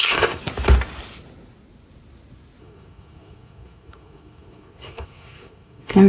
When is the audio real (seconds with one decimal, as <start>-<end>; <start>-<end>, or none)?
0.4-2.6